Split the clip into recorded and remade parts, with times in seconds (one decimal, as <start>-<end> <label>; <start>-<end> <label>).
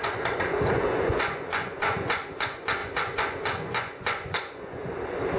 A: 0.0-5.4 remade